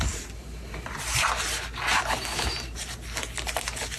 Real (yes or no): yes